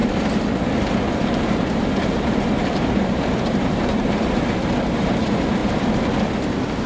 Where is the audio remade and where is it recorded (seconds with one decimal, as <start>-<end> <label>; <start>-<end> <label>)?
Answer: 0.0-1.2 recorded; 1.2-4.7 remade; 4.7-6.9 recorded